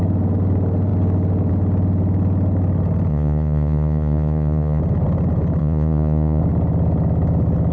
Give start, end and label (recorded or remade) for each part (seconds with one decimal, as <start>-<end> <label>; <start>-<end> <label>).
0.0-3.1 recorded; 3.1-4.8 remade; 4.8-5.6 recorded; 5.6-6.4 remade; 6.4-7.7 recorded

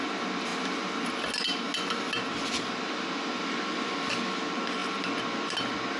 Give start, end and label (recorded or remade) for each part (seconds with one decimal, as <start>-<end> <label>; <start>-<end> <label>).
0.0-6.0 recorded

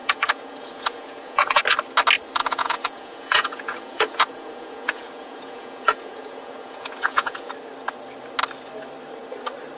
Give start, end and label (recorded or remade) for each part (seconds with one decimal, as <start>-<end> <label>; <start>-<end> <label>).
0.0-1.6 remade; 1.6-2.4 recorded; 2.4-7.5 remade; 7.5-9.8 recorded

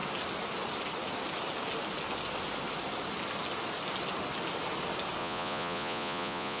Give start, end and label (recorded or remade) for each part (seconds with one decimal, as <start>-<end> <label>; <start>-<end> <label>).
0.0-5.2 recorded; 5.2-6.6 remade